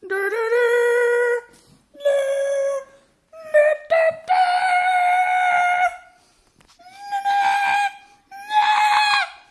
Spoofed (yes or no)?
no